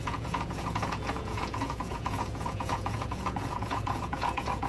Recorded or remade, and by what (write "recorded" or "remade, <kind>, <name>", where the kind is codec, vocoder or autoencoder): remade, vocoder, Vocos